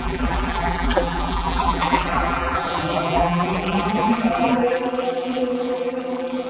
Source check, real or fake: fake